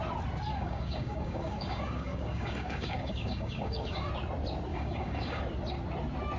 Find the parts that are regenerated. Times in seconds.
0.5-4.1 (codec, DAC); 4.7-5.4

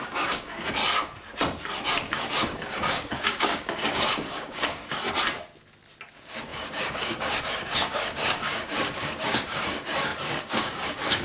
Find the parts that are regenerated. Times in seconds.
0.0-0.8 (codec, DAC); 2.0-4.8; 6.1-11.2

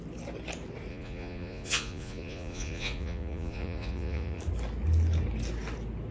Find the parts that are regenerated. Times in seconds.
0.9-4.4 (vocoder, Vocos)

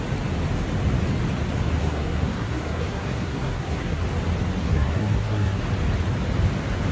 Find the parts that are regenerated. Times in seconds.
1.8-4.0 (codec, SNAC); 4.6-5.6